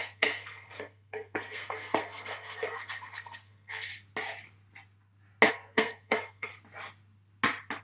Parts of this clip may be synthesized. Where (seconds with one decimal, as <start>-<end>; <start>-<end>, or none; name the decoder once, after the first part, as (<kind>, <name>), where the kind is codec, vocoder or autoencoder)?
0.0-3.9 (codec, SNAC); 5.5-6.5